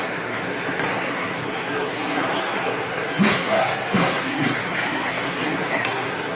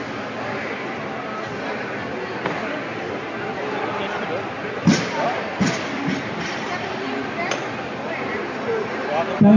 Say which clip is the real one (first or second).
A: second